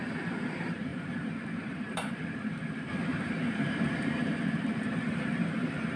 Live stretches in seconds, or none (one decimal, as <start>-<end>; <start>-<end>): none